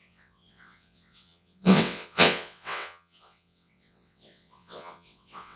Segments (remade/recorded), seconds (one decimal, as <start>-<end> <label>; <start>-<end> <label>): 0.0-5.6 remade